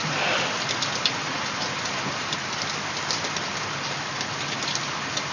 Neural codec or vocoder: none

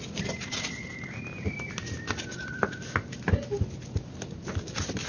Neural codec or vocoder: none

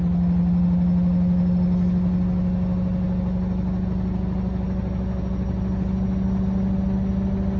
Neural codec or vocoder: none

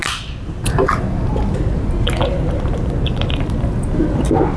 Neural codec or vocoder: none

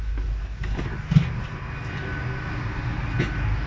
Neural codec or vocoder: none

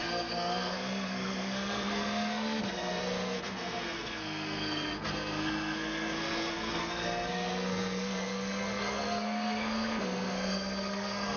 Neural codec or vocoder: codec, SNAC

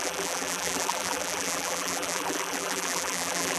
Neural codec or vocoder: vocoder, BigVGAN v2